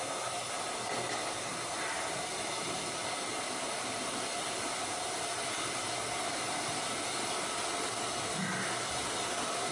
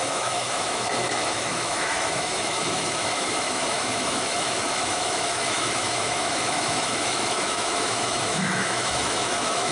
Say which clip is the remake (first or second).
second